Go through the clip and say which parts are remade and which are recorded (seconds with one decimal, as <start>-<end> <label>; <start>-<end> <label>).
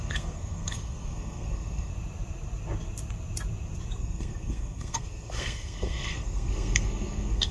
0.0-1.9 remade; 1.9-4.0 recorded; 4.0-7.5 remade